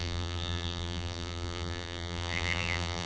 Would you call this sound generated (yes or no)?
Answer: yes